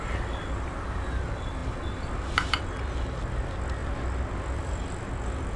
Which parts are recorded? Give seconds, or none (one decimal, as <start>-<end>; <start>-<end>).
0.0-5.6